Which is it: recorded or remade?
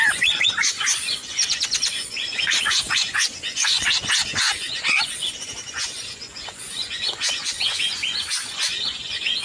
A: remade